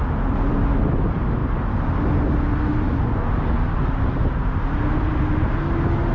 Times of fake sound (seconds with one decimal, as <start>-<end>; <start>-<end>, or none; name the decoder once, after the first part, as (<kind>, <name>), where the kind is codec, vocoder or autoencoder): none